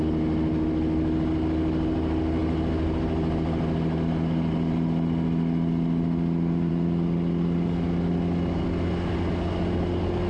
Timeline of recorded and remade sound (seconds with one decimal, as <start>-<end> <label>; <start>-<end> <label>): 0.0-10.3 recorded